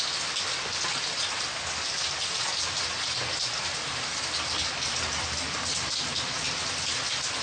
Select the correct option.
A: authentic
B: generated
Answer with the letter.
A